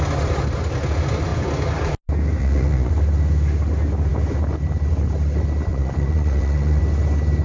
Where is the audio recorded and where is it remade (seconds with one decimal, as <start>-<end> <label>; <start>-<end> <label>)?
0.0-2.4 recorded; 2.4-2.9 remade; 2.9-5.7 recorded; 5.7-6.8 remade; 6.8-7.4 recorded